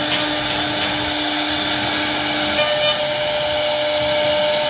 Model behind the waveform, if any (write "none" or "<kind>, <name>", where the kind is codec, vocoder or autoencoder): none